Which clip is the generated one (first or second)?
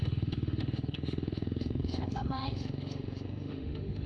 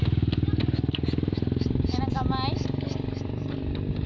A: first